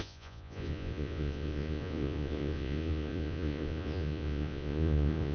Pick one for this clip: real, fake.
fake